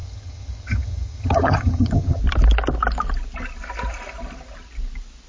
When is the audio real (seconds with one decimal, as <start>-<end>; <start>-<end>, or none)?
2.2-5.3